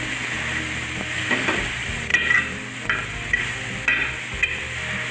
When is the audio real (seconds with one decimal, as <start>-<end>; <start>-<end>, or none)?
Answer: 0.0-5.1